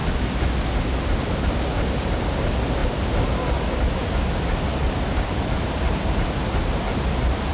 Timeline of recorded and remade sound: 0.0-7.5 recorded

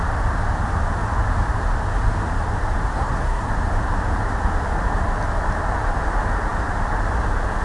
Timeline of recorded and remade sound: 0.0-2.9 recorded; 2.9-3.5 remade; 3.5-7.6 recorded